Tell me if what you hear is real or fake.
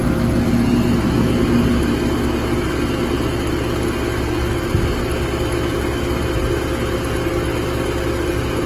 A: real